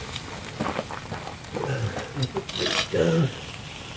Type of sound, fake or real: real